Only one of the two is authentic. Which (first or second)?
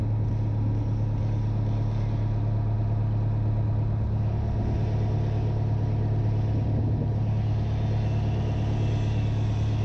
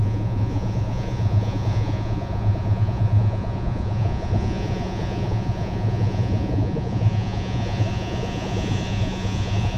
first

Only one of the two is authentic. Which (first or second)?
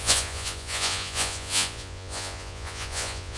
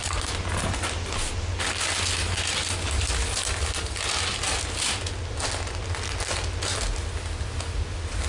second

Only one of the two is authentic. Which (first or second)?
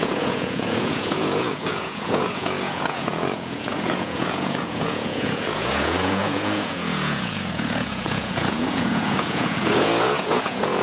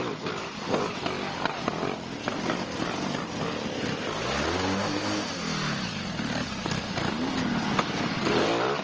second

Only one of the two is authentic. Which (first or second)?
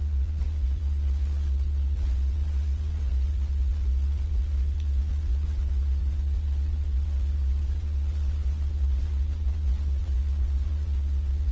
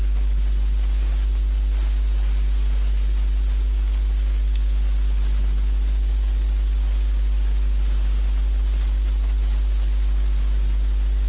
second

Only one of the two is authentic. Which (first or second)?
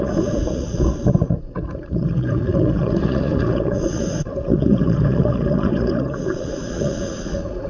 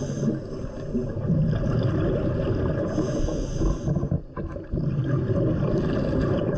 second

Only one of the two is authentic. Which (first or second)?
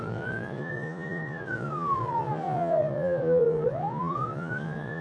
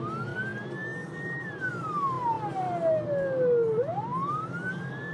second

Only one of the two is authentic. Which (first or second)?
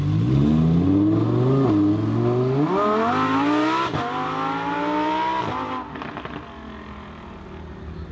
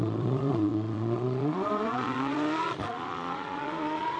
first